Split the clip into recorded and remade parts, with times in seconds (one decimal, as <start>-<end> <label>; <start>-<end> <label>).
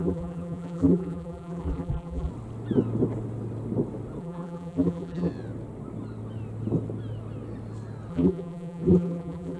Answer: 0.0-2.3 remade; 2.3-4.2 recorded; 4.2-5.3 remade; 5.3-8.1 recorded; 8.1-9.6 remade